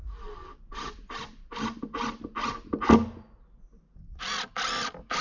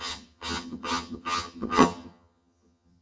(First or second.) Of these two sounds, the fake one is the second